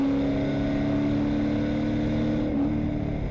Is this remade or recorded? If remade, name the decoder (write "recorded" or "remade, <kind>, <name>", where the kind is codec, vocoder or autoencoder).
recorded